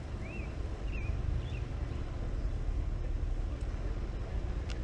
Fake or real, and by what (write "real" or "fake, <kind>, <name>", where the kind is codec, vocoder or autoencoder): real